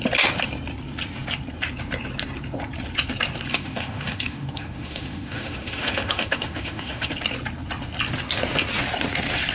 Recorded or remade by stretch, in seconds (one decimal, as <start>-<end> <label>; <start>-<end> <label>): 0.0-3.5 recorded; 3.5-7.1 remade; 7.1-9.5 recorded